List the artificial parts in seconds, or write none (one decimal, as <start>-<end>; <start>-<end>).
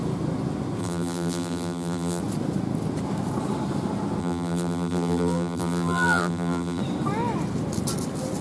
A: 0.8-2.2; 4.2-6.8